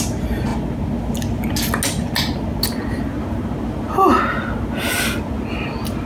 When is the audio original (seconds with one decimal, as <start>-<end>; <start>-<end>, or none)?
0.0-6.1